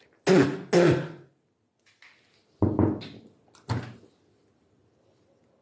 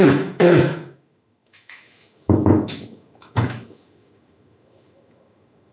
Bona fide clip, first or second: first